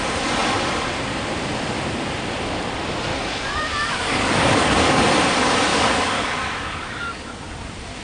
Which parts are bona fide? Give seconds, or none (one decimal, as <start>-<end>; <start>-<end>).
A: 0.0-3.1; 5.0-5.7; 7.5-8.0